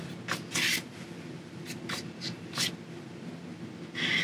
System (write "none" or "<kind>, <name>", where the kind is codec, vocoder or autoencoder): none